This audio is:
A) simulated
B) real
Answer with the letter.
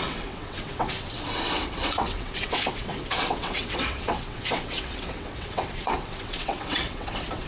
A